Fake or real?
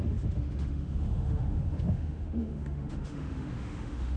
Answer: fake